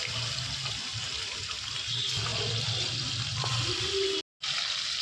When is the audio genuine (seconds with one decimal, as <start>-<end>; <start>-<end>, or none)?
0.0-0.9; 1.8-2.3; 4.2-5.0